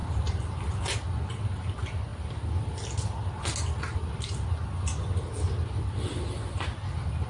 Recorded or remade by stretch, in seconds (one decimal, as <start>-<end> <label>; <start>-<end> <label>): 0.0-7.3 recorded